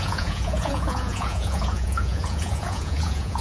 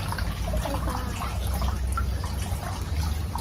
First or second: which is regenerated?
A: first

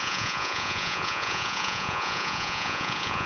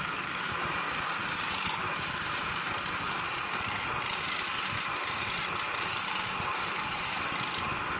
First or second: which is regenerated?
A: first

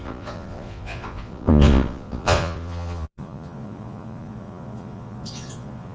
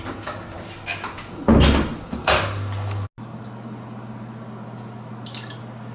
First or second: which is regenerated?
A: first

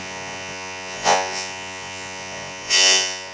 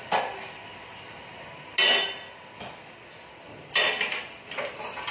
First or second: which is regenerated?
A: first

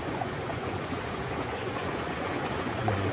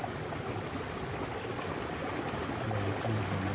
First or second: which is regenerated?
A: first